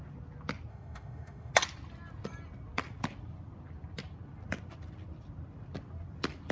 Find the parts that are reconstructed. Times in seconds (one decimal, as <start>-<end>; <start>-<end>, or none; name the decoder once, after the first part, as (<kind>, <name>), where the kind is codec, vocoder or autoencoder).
0.7-1.5 (autoencoder, DAC-VAE)